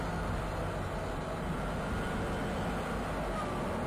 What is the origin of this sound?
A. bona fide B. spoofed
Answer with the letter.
A